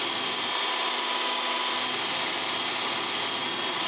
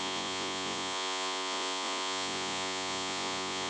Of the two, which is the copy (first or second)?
second